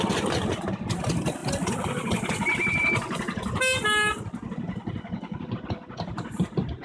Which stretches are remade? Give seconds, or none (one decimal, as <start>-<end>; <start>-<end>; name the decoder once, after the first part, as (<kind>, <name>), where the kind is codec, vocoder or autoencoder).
none